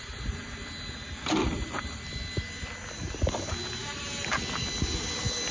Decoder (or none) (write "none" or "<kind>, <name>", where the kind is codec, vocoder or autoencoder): none